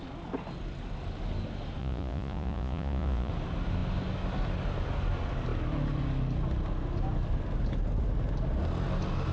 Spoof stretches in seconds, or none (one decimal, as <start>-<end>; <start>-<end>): 1.8-3.3